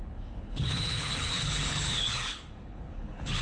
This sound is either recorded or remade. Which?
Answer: remade